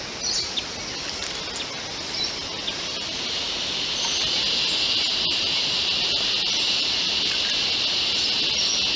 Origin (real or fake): real